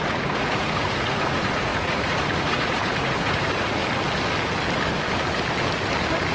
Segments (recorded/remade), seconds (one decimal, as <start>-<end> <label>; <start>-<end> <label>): 0.0-3.8 remade; 3.8-6.3 recorded